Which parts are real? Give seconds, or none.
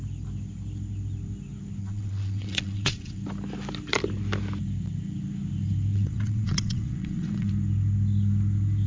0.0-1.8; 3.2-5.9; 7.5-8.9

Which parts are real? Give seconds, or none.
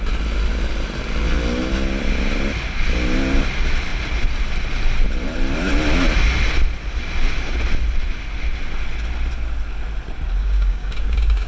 0.0-10.4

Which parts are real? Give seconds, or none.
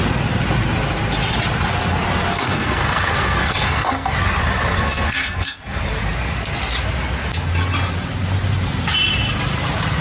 0.0-2.3; 4.1-4.7; 5.8-10.0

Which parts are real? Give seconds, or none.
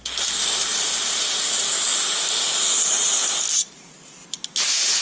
0.0-0.7; 1.5-4.2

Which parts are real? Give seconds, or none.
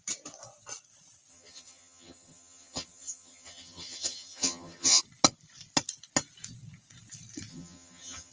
0.0-1.3; 5.0-7.5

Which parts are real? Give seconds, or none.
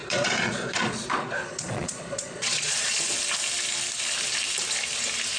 3.2-5.4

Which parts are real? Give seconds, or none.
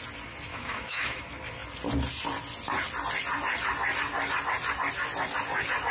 0.0-0.5; 1.2-5.9